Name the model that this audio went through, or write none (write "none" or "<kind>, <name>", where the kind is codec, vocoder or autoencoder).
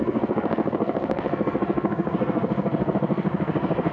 codec, SNAC